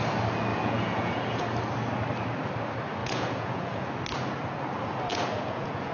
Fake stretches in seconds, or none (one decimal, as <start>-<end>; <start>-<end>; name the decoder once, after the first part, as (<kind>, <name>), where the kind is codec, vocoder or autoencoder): 0.5-1.4 (vocoder, Vocos); 3.0-3.9; 5.1-5.9